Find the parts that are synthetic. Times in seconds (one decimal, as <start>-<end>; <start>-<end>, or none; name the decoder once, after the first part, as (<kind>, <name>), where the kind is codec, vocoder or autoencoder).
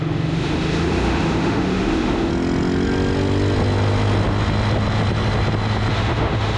0.0-2.3 (autoencoder, DAC-VAE); 5.9-6.6